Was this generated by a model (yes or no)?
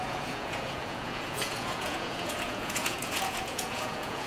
yes